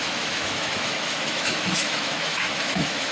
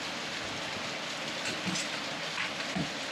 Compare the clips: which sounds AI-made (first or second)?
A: first